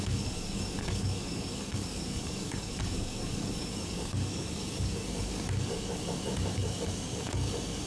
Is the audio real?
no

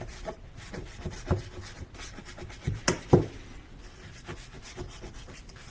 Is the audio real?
yes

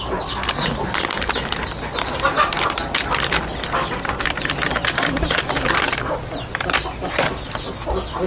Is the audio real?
yes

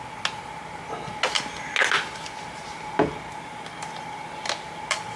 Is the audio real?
yes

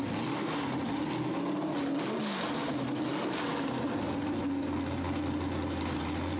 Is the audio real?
yes